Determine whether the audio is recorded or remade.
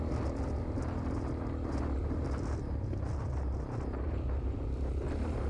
recorded